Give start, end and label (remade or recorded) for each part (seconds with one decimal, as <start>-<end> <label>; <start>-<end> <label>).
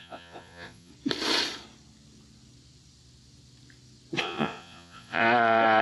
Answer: 0.0-0.9 remade; 0.9-4.2 recorded; 4.2-5.2 remade; 5.2-5.8 recorded